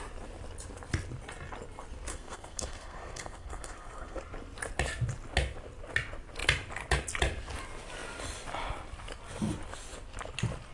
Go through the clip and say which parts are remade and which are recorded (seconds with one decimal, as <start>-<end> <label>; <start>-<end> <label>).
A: 0.0-2.1 recorded; 2.1-4.2 remade; 4.2-10.7 recorded